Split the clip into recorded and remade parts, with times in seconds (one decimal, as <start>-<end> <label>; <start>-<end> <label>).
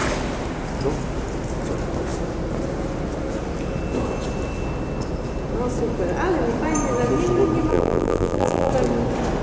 0.0-7.7 recorded; 7.7-8.7 remade; 8.7-9.4 recorded